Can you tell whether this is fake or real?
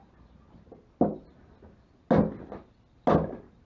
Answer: real